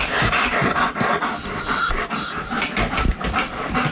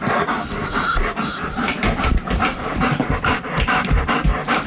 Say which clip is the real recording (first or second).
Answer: first